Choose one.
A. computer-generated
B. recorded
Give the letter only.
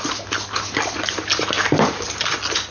B